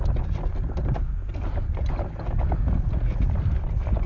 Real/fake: real